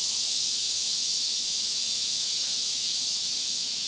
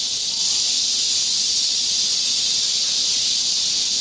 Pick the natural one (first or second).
second